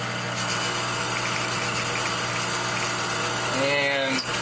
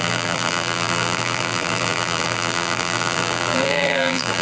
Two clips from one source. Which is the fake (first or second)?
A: second